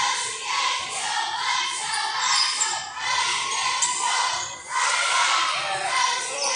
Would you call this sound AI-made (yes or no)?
yes